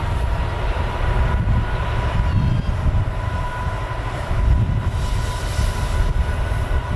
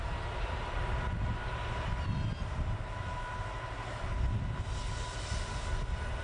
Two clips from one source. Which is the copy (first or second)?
first